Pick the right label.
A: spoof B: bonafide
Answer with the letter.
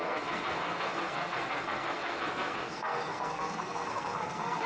A